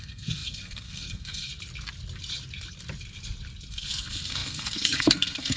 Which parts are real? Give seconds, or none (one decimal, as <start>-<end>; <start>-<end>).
1.5-3.7